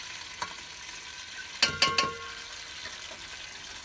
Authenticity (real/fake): real